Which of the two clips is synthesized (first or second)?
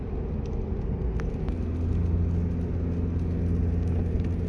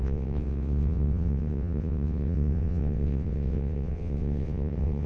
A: second